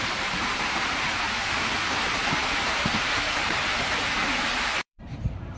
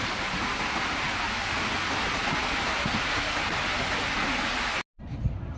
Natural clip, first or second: second